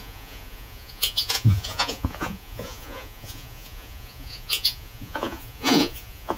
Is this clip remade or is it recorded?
remade